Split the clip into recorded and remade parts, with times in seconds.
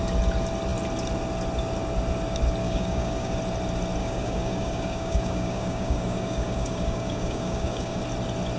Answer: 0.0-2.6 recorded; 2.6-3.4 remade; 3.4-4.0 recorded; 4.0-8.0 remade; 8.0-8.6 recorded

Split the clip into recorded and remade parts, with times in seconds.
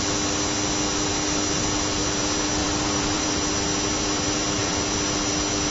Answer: 0.0-2.6 recorded; 2.6-3.3 remade; 3.3-5.7 recorded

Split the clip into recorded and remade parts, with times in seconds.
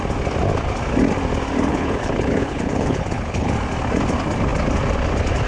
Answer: 0.0-1.7 recorded; 1.7-3.5 remade; 3.5-5.5 recorded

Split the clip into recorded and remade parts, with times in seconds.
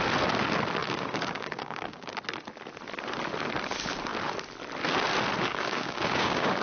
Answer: 0.0-0.8 recorded; 0.8-2.1 remade; 2.1-5.5 recorded; 5.5-6.6 remade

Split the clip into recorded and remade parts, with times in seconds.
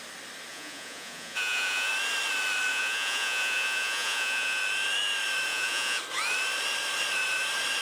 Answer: 0.0-0.5 recorded; 0.5-1.9 remade; 1.9-2.7 recorded; 2.7-4.6 remade; 4.6-5.5 recorded; 5.5-6.0 remade; 6.0-7.8 recorded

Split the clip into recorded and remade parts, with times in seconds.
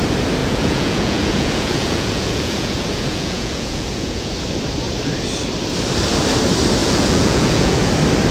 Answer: 0.0-0.4 recorded; 0.4-4.3 remade; 4.3-6.8 recorded; 6.8-7.9 remade; 7.9-8.3 recorded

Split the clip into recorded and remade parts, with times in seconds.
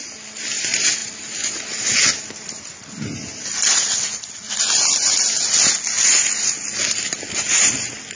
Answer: 0.0-8.2 recorded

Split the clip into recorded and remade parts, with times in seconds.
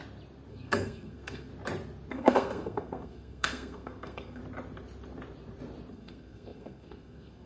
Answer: 0.0-0.5 recorded; 0.5-1.5 remade; 1.5-2.1 recorded; 2.1-4.4 remade; 4.4-5.9 recorded; 5.9-7.5 remade